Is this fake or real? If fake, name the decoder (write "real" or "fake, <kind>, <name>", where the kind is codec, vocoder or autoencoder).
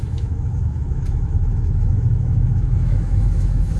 fake, autoencoder, DAC-VAE